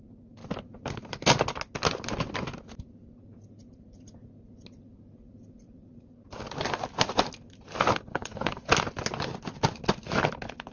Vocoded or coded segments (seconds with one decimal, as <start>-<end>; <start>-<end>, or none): 8.1-8.7